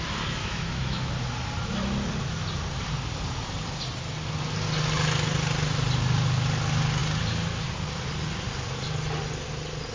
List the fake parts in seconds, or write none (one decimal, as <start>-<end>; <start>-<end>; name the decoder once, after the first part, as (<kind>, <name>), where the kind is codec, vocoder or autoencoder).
0.4-1.1 (autoencoder, DAC-VAE)